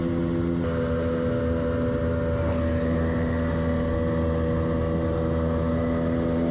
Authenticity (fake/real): real